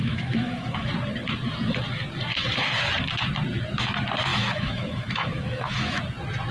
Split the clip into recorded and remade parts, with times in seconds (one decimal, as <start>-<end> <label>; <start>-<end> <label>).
0.0-0.9 remade; 0.9-4.3 recorded; 4.3-6.0 remade; 6.0-6.5 recorded